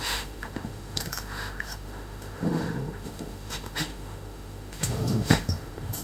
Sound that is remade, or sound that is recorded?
remade